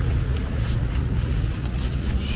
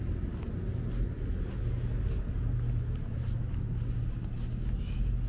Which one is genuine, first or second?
second